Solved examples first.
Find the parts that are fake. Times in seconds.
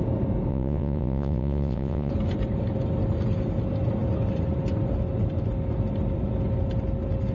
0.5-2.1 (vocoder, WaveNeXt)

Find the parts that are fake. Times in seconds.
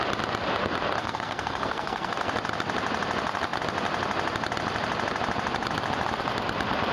1.0-2.3 (codec, SNAC)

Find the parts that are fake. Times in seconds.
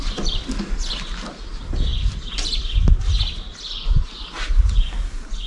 none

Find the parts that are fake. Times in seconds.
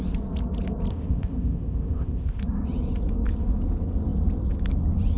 0.9-2.4 (codec, ZipCodec)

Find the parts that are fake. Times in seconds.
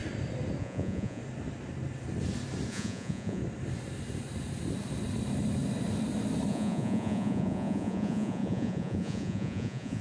0.6-1.2 (vocoder, Vocos); 2.7-3.4; 6.5-10.0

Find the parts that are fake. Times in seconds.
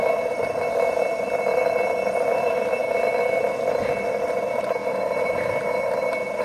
none